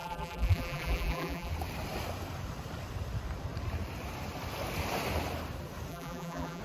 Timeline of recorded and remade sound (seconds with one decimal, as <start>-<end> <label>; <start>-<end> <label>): 0.0-1.5 remade; 1.5-5.9 recorded; 5.9-6.6 remade